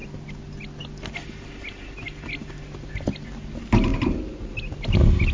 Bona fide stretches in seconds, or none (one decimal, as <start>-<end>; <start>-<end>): 0.0-5.3